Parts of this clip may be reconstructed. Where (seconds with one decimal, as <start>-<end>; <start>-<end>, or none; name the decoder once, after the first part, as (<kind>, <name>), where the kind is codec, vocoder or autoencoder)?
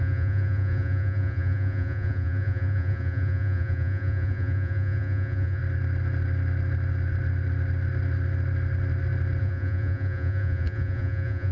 0.0-5.6 (vocoder, Vocos); 9.4-11.5